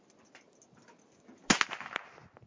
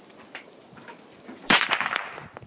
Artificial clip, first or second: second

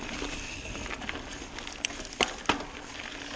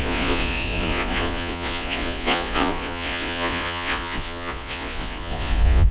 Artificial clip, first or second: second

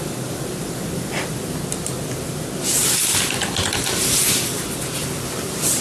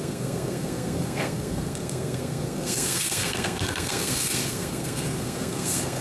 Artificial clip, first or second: second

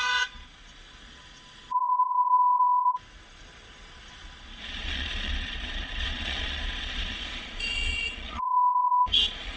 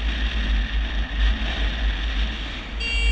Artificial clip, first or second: first